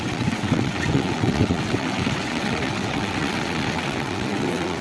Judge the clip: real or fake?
fake